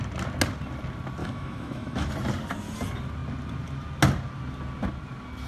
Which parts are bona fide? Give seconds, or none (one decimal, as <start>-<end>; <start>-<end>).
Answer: 0.0-1.2; 2.1-5.5